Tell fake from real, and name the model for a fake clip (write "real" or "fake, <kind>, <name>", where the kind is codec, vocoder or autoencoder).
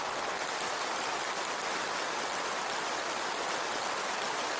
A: real